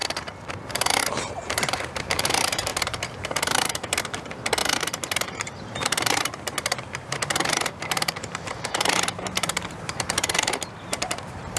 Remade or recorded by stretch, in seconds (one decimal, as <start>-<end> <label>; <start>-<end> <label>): 0.0-0.7 recorded; 0.7-11.6 remade